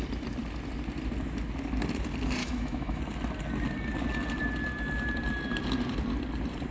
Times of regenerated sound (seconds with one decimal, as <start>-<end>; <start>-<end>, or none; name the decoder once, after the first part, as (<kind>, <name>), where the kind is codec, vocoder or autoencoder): 2.4-3.0 (autoencoder, DAC-VAE)